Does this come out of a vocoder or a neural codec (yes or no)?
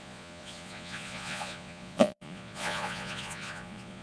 yes